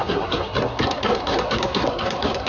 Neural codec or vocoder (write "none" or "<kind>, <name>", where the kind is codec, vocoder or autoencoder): codec, SNAC